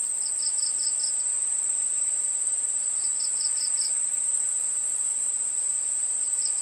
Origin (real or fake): fake